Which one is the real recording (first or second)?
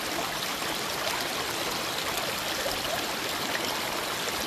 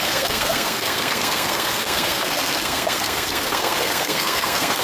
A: first